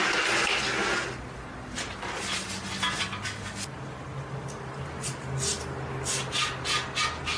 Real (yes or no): yes